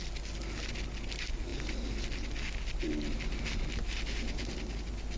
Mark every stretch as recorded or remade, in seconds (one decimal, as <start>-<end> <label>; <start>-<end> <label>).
0.0-5.2 recorded